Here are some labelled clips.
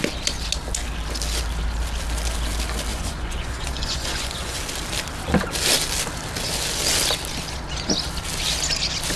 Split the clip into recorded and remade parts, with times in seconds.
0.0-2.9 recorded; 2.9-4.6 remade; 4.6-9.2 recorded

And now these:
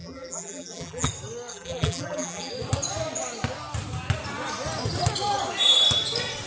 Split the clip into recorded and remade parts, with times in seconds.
0.0-1.1 remade; 1.1-1.5 recorded; 1.5-2.5 remade; 2.5-6.5 recorded

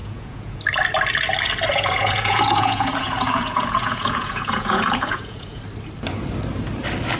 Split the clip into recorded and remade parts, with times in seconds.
0.0-0.6 remade; 0.6-1.7 recorded; 1.7-5.6 remade; 5.6-7.2 recorded